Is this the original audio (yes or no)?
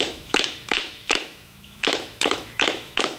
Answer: no